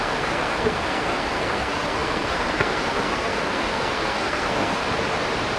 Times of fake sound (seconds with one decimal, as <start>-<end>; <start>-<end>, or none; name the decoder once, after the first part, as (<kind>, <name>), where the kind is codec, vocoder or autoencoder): 0.0-4.8 (codec, SNAC)